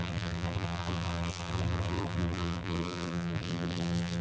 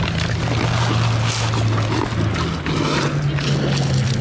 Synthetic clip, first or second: first